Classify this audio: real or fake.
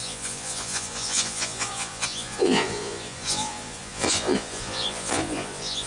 fake